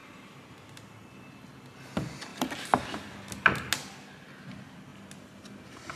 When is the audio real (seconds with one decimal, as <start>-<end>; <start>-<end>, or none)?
0.5-6.0